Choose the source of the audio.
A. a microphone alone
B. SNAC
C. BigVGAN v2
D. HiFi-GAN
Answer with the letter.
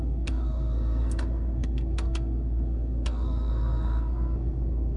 B